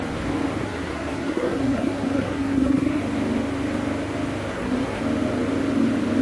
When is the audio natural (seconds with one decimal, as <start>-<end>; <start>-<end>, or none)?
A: 0.0-0.6; 3.0-4.5; 5.0-6.2